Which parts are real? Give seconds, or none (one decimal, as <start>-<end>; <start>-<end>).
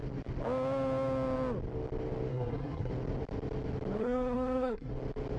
0.0-2.3; 2.9-4.0; 4.9-5.4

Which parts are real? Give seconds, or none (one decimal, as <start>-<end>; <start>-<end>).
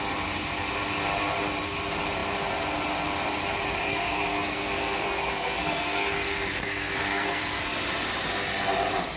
0.0-3.9; 7.4-9.2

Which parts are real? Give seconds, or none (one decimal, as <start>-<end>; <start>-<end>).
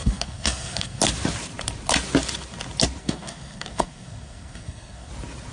1.0-3.0; 5.1-5.5